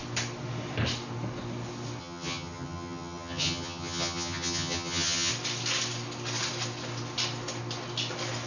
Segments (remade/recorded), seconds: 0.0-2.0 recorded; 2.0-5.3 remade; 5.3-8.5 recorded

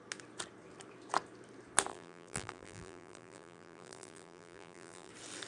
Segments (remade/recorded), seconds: 0.0-1.9 recorded; 1.9-5.1 remade; 5.1-5.5 recorded

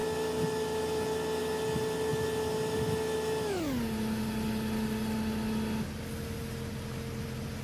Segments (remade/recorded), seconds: 0.0-7.6 recorded

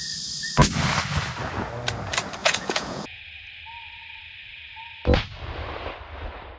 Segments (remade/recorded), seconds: 0.0-2.4 recorded; 2.4-3.2 remade; 3.2-6.6 recorded

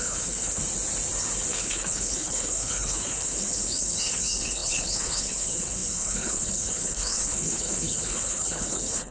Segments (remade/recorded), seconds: 0.0-0.6 remade; 0.6-1.5 recorded; 1.5-9.1 remade

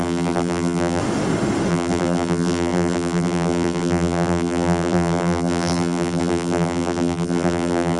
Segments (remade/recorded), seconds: 0.0-1.0 remade; 1.0-1.7 recorded; 1.7-8.0 remade

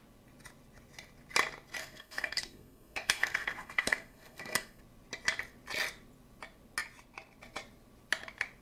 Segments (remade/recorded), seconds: 0.0-1.8 recorded; 1.8-4.8 remade; 4.8-8.6 recorded

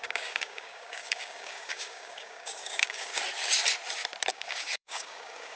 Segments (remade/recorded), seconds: 0.0-3.1 remade; 3.1-4.3 recorded; 4.3-5.6 remade